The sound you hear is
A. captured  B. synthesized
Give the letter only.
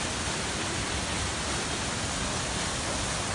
A